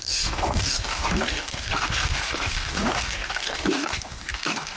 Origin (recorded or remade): remade